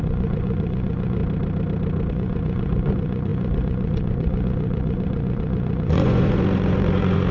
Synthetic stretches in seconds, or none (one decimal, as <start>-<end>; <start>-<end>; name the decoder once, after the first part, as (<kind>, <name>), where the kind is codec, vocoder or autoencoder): 0.0-1.2 (vocoder, Vocos); 2.1-7.3